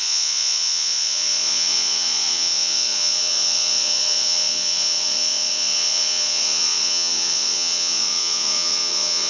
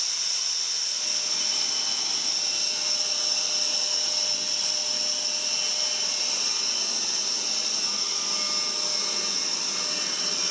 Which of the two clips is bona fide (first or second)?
second